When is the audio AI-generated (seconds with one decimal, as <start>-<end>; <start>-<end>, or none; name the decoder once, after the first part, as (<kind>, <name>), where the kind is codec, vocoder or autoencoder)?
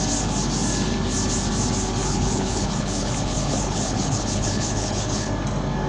2.0-5.3 (codec, HILCodec)